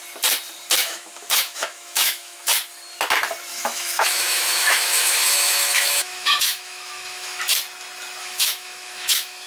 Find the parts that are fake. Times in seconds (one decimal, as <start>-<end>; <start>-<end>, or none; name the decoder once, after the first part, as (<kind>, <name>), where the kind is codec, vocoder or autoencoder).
0.8-2.5 (autoencoder, DAC-VAE); 3.5-7.4; 8.2-9.5